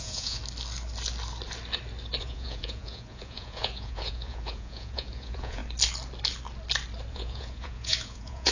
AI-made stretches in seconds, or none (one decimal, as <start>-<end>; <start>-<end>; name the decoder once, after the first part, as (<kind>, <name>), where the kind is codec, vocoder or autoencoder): 0.0-0.4 (vocoder, Vocos); 2.2-5.6; 7.1-8.5